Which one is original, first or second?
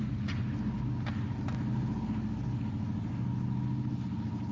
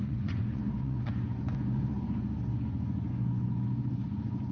first